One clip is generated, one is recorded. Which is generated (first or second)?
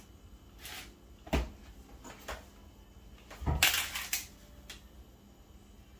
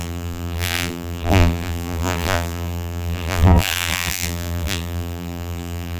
second